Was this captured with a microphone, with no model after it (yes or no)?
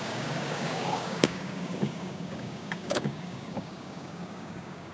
no